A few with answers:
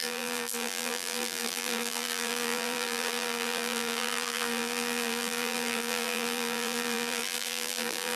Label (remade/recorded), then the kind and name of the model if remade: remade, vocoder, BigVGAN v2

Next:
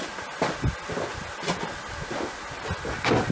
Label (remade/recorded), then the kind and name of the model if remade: recorded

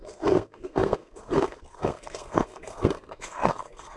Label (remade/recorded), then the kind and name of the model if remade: remade, codec, SNAC